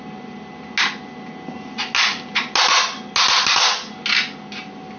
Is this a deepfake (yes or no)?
no